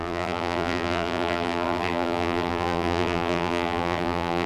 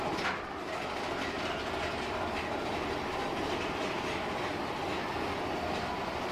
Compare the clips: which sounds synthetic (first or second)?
first